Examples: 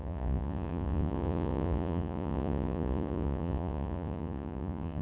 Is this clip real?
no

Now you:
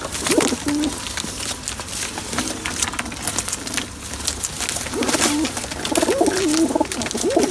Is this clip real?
yes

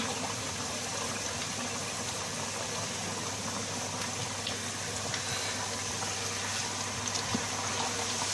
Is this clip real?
no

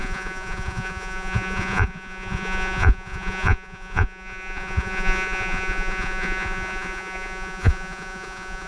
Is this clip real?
no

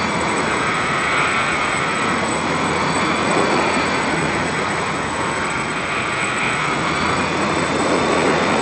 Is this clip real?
no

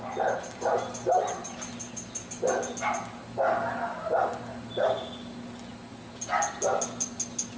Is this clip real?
yes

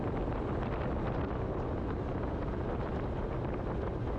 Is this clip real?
yes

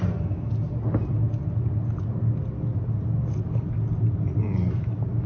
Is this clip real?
yes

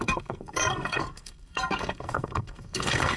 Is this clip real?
no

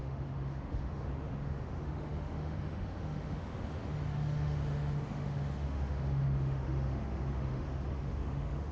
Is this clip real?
no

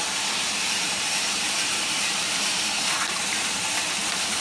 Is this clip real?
no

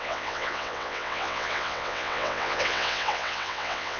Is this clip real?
no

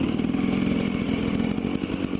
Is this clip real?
yes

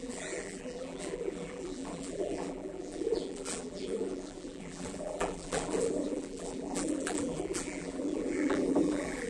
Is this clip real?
no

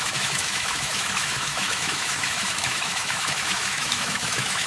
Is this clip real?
no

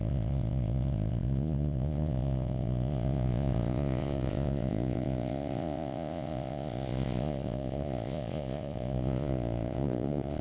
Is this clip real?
no